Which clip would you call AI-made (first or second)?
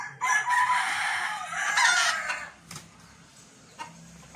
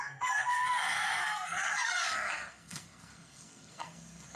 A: second